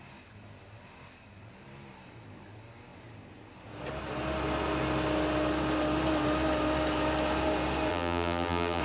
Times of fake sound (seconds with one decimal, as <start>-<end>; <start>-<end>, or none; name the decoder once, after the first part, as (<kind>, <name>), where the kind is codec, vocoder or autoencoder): 7.9-8.8 (vocoder, BigVGAN v2)